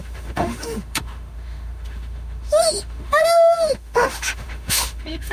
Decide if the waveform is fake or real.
fake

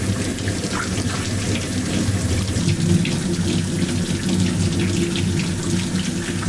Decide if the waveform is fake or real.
real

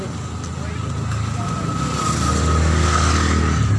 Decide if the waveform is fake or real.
real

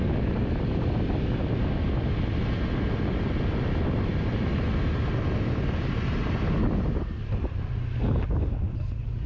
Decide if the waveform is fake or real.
real